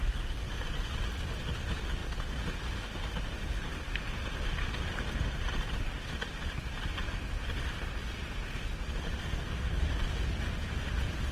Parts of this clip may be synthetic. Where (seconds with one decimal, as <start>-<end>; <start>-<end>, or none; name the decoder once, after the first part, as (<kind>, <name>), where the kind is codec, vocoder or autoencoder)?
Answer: 9.2-9.8 (codec, SNAC)